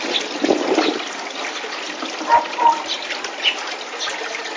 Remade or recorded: recorded